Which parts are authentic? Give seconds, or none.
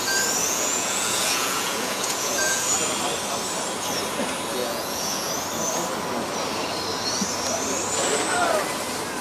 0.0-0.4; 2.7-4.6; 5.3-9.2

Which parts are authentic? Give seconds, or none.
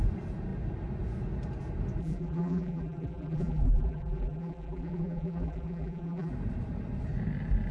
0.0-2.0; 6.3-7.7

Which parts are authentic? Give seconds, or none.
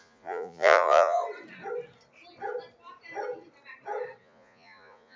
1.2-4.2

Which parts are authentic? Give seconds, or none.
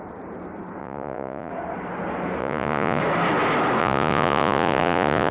0.0-0.8; 1.5-2.4; 3.0-3.8